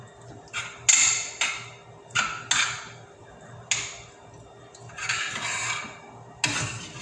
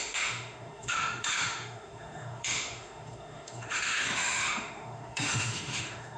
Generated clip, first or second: second